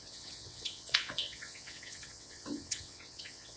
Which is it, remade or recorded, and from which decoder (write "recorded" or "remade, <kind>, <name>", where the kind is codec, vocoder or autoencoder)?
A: remade, vocoder, WaveNeXt